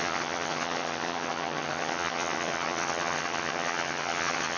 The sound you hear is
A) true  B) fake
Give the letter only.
B